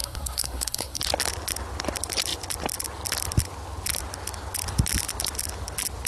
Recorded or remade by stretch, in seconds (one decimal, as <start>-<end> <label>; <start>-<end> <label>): 0.0-1.0 remade; 1.0-6.1 recorded